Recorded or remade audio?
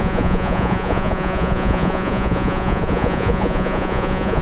remade